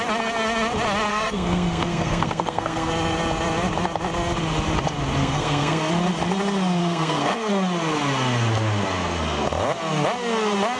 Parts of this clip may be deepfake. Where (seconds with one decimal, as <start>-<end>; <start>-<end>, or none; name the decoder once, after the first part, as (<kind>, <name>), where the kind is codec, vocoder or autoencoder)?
1.1-2.9 (codec, SNAC); 5.2-5.9; 6.8-7.5